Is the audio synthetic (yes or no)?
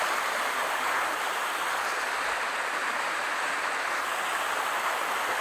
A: no